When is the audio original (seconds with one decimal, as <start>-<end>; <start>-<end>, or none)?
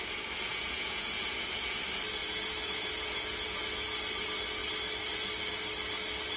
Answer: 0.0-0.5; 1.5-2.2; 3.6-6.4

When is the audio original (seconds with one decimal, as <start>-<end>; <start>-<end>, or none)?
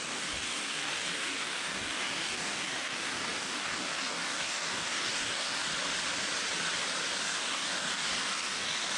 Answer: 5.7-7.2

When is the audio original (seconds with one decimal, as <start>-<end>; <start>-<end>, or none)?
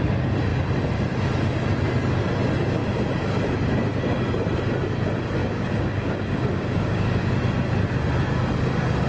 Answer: 0.0-5.4; 7.3-9.1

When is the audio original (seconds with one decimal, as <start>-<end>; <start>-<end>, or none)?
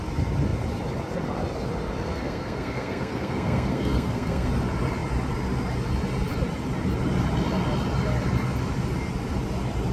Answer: 0.0-2.1; 4.5-9.9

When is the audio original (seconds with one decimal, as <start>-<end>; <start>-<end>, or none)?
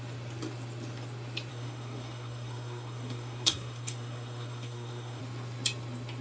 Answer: 0.0-1.5; 5.2-6.2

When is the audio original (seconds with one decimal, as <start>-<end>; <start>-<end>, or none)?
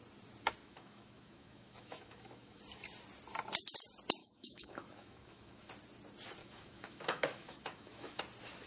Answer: 0.0-0.6; 2.6-4.2; 5.7-6.4; 8.2-8.7